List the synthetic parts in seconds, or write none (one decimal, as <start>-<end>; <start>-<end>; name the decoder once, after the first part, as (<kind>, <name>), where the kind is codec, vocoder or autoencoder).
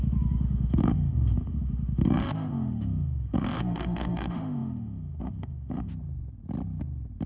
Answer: 0.0-5.9 (autoencoder, DAC-VAE)